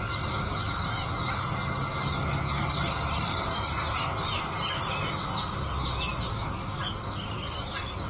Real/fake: real